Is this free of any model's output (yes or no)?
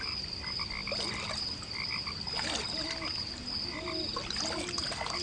yes